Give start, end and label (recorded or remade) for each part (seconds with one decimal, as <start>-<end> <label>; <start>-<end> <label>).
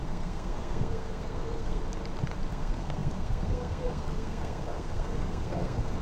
0.0-1.8 remade; 1.8-2.5 recorded; 2.5-6.0 remade